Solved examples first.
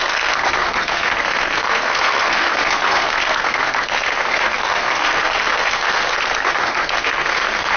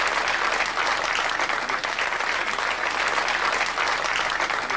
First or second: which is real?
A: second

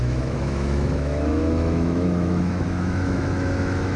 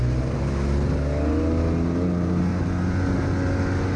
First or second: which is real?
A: second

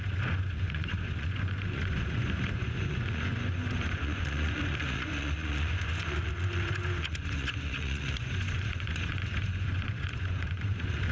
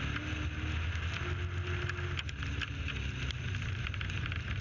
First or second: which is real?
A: second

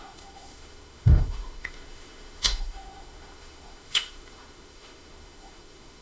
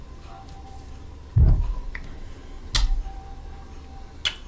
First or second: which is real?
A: second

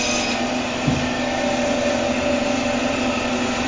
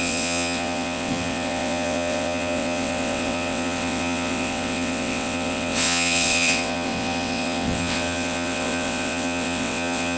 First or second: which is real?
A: first